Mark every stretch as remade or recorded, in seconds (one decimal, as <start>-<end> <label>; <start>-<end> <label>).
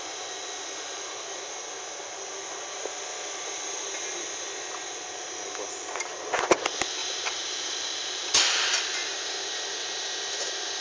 0.0-7.0 recorded; 7.0-8.8 remade; 8.8-10.8 recorded